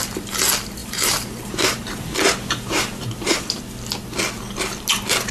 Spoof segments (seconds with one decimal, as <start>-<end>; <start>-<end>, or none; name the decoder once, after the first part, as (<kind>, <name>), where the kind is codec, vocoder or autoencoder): 0.8-3.6 (vocoder, BigVGAN v2)